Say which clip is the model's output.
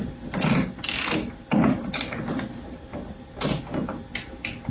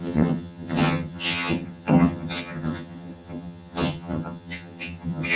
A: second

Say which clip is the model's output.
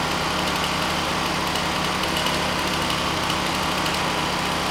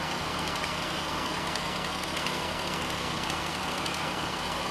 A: second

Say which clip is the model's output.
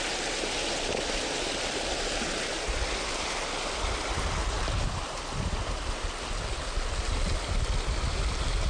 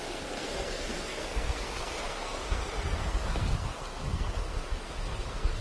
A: second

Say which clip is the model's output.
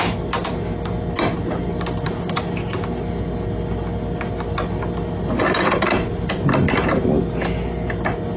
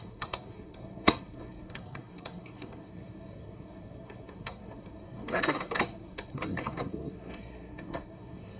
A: second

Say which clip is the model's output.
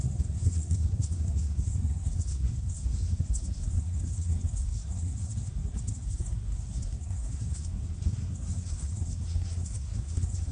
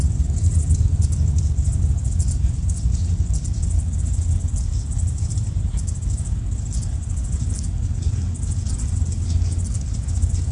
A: first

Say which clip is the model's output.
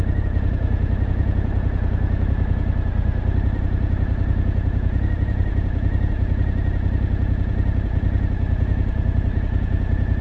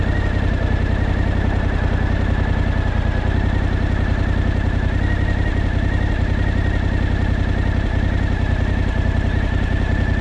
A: first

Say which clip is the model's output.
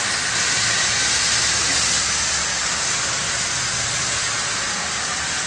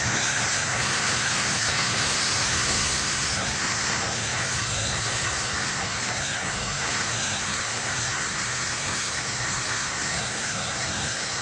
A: second